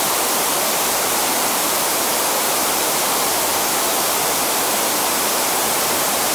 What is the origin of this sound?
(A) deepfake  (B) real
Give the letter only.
A